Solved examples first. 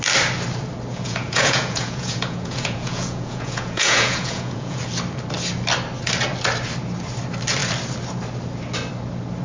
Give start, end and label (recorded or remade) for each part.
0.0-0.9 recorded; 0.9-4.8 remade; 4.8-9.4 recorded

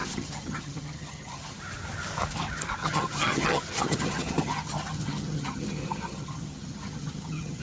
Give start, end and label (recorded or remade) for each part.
0.0-1.6 remade; 1.6-2.8 recorded; 2.8-7.6 remade

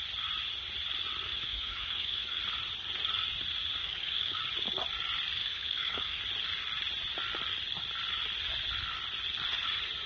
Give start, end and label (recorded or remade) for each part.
0.0-1.3 recorded; 1.3-2.4 remade; 2.4-3.8 recorded; 3.8-4.4 remade; 4.4-5.4 recorded; 5.4-6.2 remade; 6.2-10.1 recorded